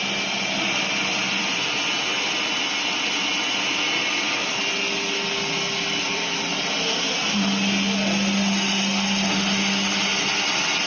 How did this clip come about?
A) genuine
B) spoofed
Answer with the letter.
A